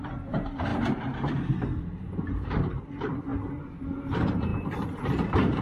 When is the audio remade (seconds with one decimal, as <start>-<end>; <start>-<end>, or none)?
0.0-5.6